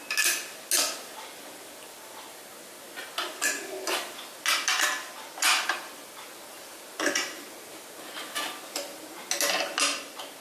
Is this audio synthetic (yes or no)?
no